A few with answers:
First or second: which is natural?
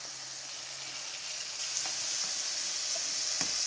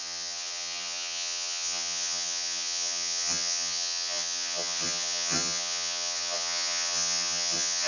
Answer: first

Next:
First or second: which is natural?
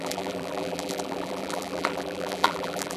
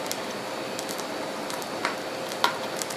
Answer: second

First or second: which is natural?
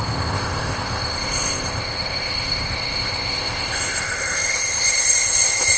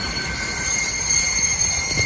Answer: second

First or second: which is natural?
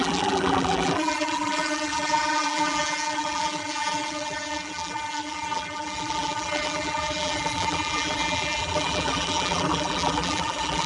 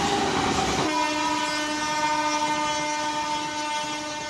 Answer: second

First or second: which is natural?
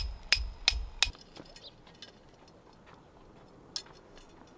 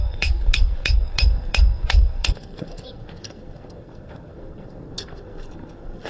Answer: first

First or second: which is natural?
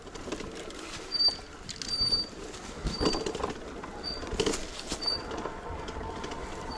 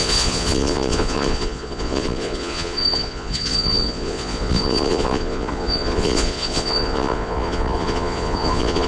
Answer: first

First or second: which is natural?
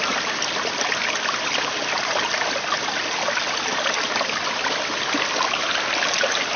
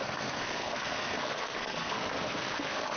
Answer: first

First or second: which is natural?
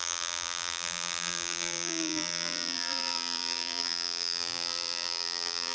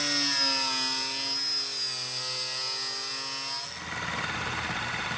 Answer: second